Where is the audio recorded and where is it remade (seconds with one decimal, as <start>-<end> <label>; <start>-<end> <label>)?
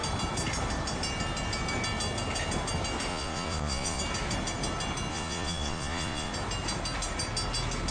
0.0-3.1 recorded; 3.1-4.0 remade; 4.0-5.1 recorded; 5.1-6.3 remade; 6.3-7.9 recorded